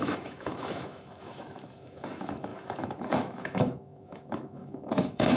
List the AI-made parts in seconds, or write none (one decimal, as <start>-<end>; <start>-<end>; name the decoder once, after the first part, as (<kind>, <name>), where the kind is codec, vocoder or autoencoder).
0.0-5.4 (autoencoder, DAC-VAE)